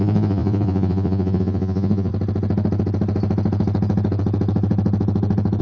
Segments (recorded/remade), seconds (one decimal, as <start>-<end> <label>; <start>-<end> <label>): 0.0-2.1 remade; 2.1-5.6 recorded